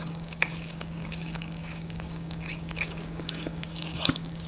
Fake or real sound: fake